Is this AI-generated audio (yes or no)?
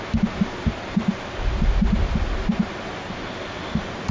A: no